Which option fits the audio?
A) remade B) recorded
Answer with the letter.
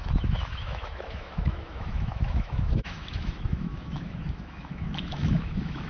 A